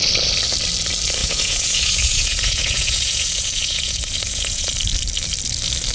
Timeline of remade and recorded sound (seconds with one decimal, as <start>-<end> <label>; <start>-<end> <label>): 0.0-1.2 recorded; 1.2-4.7 remade; 4.7-5.9 recorded